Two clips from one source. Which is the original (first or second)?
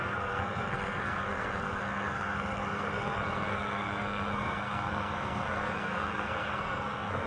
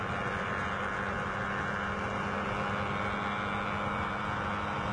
second